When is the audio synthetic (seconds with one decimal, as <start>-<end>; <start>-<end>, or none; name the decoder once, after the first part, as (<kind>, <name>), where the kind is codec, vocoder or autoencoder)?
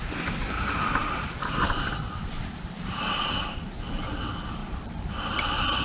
1.0-3.6 (vocoder, BigVGAN v2); 4.6-5.8